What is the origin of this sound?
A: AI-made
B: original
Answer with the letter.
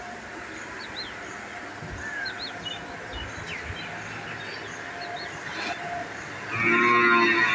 B